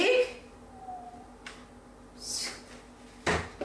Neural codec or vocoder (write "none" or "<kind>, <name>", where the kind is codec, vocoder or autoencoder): none